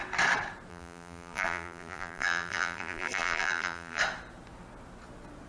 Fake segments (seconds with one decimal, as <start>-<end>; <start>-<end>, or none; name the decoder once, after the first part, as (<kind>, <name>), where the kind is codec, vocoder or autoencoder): 0.7-4.0 (vocoder, BigVGAN v2)

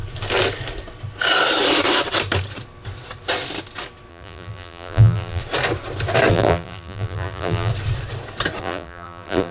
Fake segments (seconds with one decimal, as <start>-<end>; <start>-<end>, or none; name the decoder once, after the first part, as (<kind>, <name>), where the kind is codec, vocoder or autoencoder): 4.1-5.4 (vocoder, BigVGAN v2); 6.3-7.7; 8.6-9.5